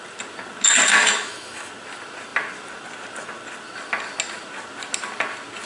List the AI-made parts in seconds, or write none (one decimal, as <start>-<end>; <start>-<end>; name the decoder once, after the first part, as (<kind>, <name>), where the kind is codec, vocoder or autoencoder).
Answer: 1.0-1.7 (autoencoder, DAC-VAE)